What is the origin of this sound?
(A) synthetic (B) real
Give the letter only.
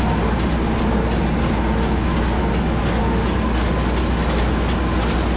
B